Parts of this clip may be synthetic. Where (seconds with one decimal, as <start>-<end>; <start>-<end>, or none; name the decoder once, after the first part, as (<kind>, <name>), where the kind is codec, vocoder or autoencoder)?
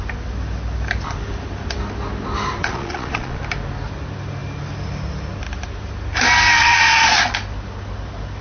2.6-3.4 (vocoder, Vocos); 6.6-7.2